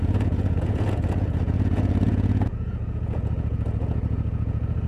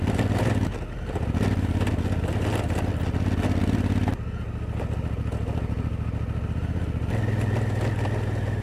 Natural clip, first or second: second